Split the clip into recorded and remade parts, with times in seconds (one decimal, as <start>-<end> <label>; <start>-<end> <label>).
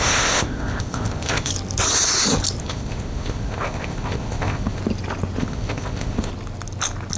0.0-1.5 remade; 1.5-2.6 recorded; 2.6-4.8 remade; 4.8-5.4 recorded; 5.4-6.3 remade; 6.3-7.2 recorded